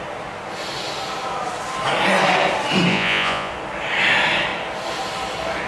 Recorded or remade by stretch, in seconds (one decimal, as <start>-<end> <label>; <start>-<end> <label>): 0.0-2.9 recorded; 2.9-3.5 remade; 3.5-5.7 recorded